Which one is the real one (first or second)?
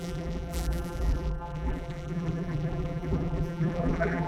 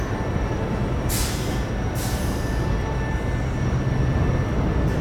second